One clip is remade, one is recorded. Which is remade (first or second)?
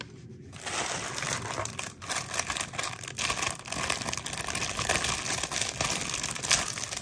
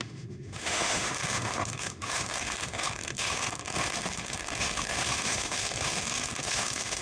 second